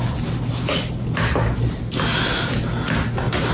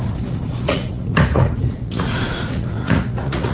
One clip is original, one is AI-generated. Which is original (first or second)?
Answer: first